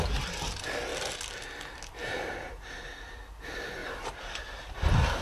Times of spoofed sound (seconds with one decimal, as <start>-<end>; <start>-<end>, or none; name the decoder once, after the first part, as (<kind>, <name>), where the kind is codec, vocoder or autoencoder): 2.0-2.6 (vocoder, BigVGAN v2); 3.8-4.4

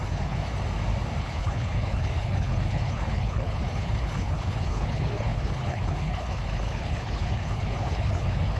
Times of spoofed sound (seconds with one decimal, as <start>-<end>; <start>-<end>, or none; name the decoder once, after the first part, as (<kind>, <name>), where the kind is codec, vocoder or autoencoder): 0.0-0.4 (codec, HILCodec); 1.2-8.6

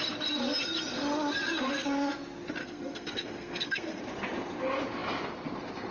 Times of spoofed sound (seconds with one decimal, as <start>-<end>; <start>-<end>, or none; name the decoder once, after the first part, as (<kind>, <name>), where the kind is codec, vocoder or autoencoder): 2.6-4.0 (codec, SNAC)

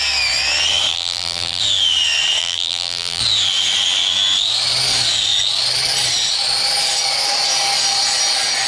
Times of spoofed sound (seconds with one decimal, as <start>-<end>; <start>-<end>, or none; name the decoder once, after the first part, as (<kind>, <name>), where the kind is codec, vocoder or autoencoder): 0.9-1.6 (vocoder, BigVGAN v2); 2.4-3.2

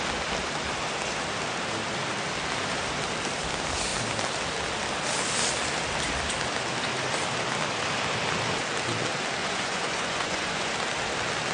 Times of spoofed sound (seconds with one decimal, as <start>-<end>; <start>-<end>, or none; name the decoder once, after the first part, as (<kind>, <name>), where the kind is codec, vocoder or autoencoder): 9.4-10.7 (vocoder, Vocos)

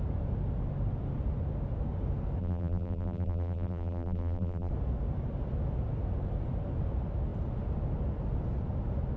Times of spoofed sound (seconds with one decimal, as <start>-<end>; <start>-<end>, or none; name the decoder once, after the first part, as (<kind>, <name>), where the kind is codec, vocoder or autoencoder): 2.4-4.7 (vocoder, BigVGAN v2)